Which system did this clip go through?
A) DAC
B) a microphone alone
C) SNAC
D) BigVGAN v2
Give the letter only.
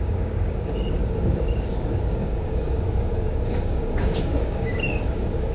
A